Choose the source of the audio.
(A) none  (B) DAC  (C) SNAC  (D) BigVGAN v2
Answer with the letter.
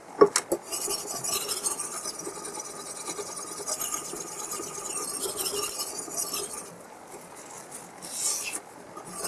A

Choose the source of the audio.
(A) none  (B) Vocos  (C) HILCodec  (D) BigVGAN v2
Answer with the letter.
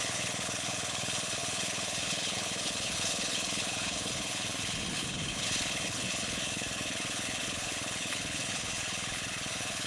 C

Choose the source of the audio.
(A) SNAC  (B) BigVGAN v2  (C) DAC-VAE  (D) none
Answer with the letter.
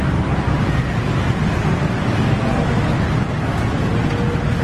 D